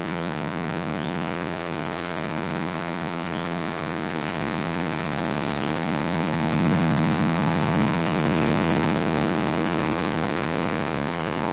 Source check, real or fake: fake